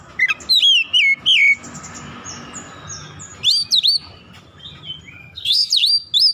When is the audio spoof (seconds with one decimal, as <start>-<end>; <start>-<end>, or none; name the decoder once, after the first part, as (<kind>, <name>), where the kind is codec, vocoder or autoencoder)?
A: 5.2-5.7 (codec, SNAC)